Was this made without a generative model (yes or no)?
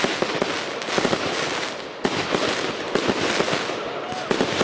yes